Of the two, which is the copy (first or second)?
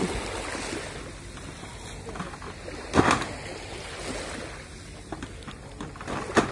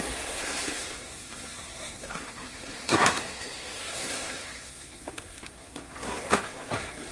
second